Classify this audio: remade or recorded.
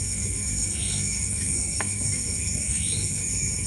remade